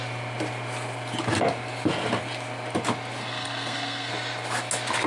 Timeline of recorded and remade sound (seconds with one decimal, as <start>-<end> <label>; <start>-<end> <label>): 0.0-3.2 recorded; 3.2-4.1 remade; 4.1-5.1 recorded